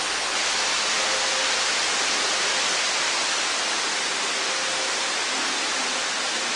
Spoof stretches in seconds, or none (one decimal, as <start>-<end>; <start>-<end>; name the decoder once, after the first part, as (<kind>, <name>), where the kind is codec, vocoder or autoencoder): none